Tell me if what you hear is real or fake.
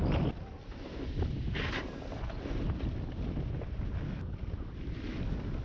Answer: real